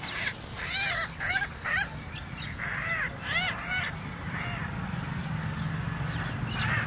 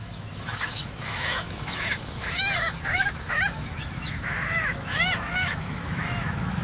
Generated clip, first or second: second